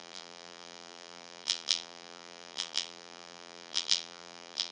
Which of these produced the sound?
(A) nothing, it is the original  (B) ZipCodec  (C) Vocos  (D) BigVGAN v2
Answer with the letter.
D